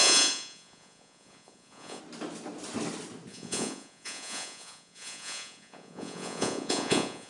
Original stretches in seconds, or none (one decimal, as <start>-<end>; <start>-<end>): 2.0-3.3